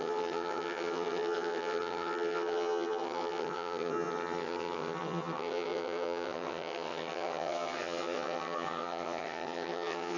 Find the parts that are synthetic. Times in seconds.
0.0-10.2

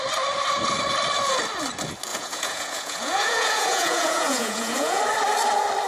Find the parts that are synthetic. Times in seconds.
2.1-5.0